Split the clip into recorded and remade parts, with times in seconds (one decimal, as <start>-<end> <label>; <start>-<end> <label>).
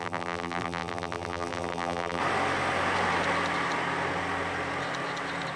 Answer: 0.0-2.2 remade; 2.2-5.6 recorded